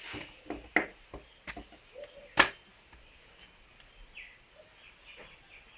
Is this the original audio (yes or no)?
yes